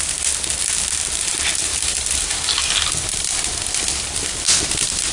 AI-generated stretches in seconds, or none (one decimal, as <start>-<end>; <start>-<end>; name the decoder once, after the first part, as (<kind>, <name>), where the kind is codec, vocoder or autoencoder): none